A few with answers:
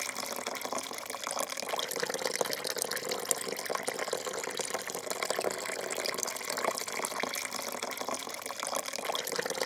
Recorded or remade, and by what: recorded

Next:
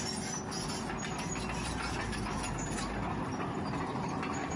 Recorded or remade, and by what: recorded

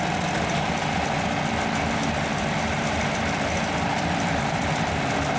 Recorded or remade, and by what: remade, vocoder, BigVGAN v2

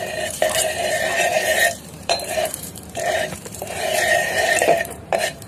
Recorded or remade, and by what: remade, vocoder, BigVGAN v2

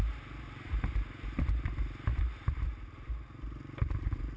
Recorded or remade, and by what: recorded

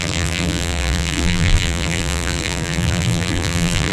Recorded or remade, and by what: remade, vocoder, BigVGAN v2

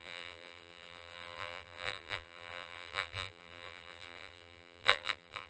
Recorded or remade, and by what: remade, vocoder, BigVGAN v2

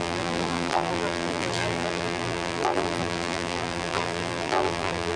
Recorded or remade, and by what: remade, vocoder, BigVGAN v2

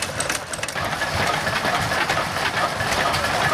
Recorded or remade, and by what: remade, vocoder, BigVGAN v2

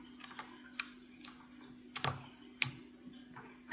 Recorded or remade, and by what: recorded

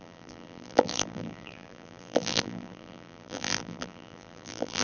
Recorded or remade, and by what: remade, vocoder, BigVGAN v2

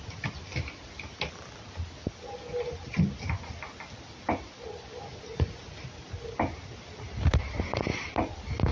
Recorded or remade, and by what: recorded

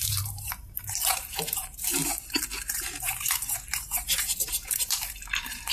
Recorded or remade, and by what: remade, vocoder, BigVGAN v2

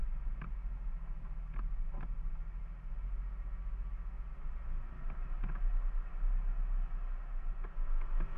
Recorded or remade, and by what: recorded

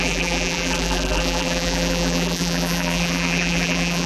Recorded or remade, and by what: remade, vocoder, BigVGAN v2